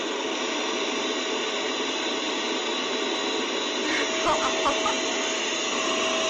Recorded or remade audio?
recorded